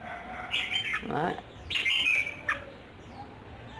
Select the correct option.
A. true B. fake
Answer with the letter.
A